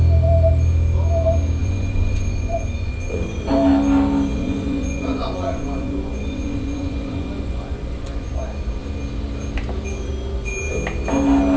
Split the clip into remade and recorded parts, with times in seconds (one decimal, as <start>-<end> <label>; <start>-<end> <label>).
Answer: 0.0-1.6 recorded; 1.6-3.5 remade; 3.5-4.3 recorded; 4.3-8.3 remade; 8.3-11.6 recorded